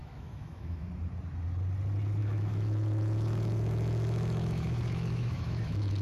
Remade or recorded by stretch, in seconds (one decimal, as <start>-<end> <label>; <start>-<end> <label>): 0.0-0.9 remade; 0.9-2.2 recorded; 2.2-6.0 remade